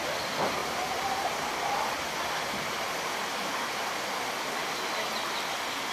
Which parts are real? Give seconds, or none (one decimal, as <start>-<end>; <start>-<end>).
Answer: 0.0-0.6; 3.9-5.9